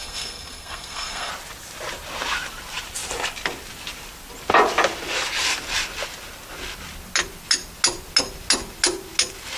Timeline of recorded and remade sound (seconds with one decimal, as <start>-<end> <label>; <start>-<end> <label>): 0.0-1.3 remade; 1.3-9.6 recorded